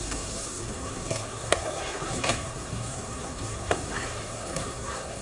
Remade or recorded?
remade